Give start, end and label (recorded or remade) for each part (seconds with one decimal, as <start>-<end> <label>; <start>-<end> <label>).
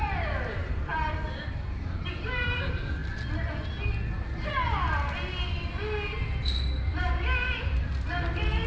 0.0-8.7 recorded